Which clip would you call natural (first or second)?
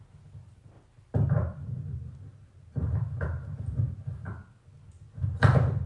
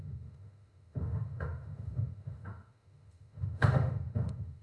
first